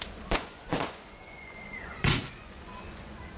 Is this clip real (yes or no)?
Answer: no